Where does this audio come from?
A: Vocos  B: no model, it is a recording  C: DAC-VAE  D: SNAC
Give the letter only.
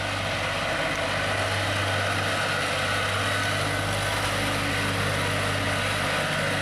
B